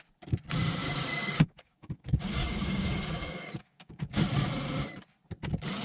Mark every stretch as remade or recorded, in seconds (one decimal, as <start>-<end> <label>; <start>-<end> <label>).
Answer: 0.0-0.8 recorded; 0.8-4.2 remade; 4.2-5.8 recorded

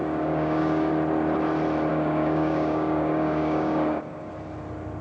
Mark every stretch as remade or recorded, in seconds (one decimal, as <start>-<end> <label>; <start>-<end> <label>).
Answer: 0.0-0.9 remade; 0.9-1.9 recorded; 1.9-4.3 remade; 4.3-5.0 recorded

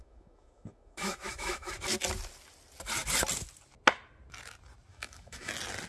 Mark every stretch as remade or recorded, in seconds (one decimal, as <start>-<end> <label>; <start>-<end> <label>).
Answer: 0.0-1.7 remade; 1.7-4.9 recorded; 4.9-5.5 remade; 5.5-5.9 recorded

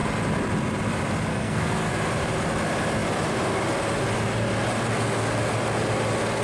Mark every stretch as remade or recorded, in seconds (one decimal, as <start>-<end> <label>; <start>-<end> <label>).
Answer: 0.0-1.3 recorded; 1.3-1.9 remade; 1.9-6.4 recorded

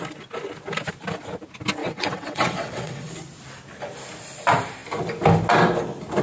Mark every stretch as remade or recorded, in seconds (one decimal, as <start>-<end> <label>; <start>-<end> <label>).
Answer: 0.0-1.8 recorded; 1.8-3.1 remade; 3.1-6.2 recorded

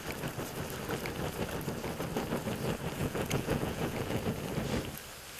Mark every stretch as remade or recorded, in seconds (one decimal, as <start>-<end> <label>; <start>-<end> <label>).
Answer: 0.0-3.0 recorded; 3.0-4.2 remade; 4.2-5.4 recorded

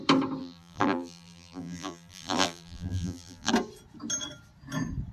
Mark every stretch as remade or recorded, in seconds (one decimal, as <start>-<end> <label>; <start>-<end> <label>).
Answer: 0.0-0.4 recorded; 0.4-3.5 remade; 3.5-5.1 recorded